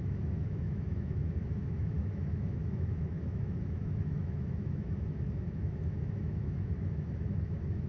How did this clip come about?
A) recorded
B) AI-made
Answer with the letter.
B